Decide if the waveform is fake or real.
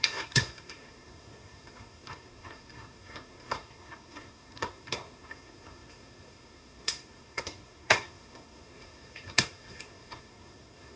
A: fake